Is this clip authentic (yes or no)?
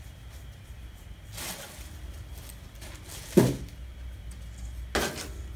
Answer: yes